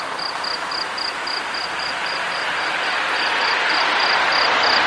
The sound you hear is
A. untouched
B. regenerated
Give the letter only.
A